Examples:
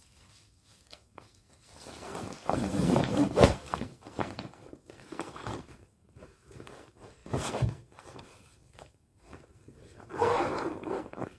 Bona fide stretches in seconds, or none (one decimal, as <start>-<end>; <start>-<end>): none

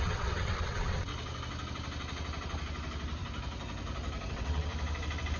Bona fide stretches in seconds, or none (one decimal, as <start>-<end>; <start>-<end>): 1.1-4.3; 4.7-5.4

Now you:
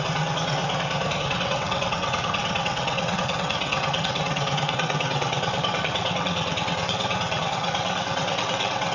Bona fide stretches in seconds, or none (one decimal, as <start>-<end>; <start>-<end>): 0.6-1.2